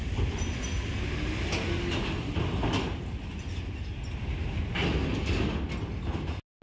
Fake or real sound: real